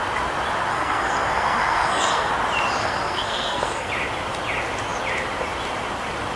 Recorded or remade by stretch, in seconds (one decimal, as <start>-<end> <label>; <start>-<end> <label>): 0.0-0.7 recorded; 0.7-2.3 remade; 2.3-2.8 recorded; 2.8-3.9 remade; 3.9-6.4 recorded